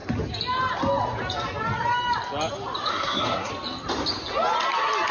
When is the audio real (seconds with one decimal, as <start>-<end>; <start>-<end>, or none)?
0.0-2.9; 3.5-5.1